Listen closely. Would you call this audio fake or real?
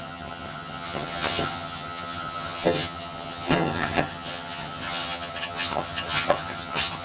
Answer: fake